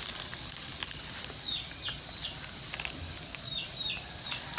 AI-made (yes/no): yes